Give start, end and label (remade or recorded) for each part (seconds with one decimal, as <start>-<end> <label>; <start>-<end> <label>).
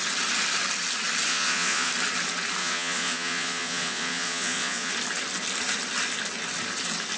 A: 0.0-1.3 recorded; 1.3-1.9 remade; 1.9-2.6 recorded; 2.6-4.9 remade; 4.9-7.2 recorded